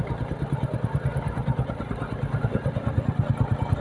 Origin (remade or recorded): recorded